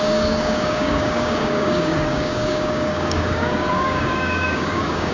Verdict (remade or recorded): remade